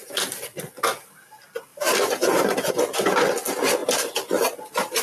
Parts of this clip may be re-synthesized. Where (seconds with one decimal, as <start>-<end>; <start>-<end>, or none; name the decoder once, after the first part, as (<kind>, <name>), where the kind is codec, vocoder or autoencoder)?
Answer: 1.7-2.7 (vocoder, BigVGAN v2); 3.8-5.0